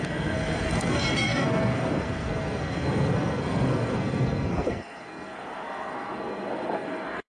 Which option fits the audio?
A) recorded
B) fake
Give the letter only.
B